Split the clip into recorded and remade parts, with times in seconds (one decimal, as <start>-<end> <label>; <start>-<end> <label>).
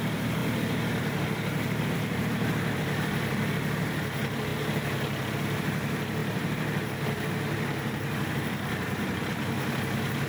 0.0-0.4 remade; 0.4-1.0 recorded; 1.0-10.3 remade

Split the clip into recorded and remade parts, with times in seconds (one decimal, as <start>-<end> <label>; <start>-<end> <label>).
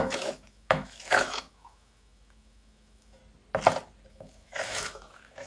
0.0-3.2 remade; 3.2-4.1 recorded; 4.1-5.5 remade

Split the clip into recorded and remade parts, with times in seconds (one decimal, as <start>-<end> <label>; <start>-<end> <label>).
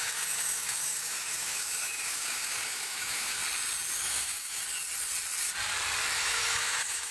0.0-3.4 remade; 3.4-4.0 recorded; 4.0-4.6 remade; 4.6-6.2 recorded; 6.2-7.1 remade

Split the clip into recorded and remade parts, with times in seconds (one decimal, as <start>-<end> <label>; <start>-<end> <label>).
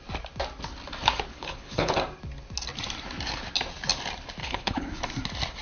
0.0-1.3 recorded; 1.3-1.9 remade; 1.9-4.4 recorded; 4.4-5.0 remade; 5.0-5.6 recorded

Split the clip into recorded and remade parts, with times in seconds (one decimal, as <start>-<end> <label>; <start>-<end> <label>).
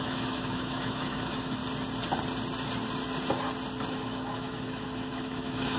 0.0-1.6 remade; 1.6-3.9 recorded; 3.9-5.8 remade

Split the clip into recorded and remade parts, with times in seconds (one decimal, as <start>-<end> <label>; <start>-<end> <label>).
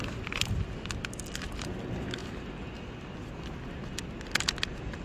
0.0-5.0 recorded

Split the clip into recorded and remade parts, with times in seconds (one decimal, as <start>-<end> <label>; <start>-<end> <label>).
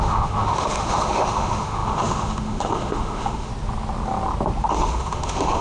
0.0-3.5 remade; 3.5-4.7 recorded; 4.7-5.6 remade